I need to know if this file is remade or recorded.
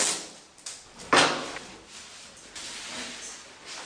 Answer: recorded